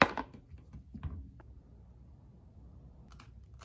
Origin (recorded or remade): recorded